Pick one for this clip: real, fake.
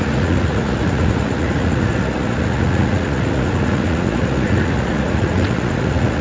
fake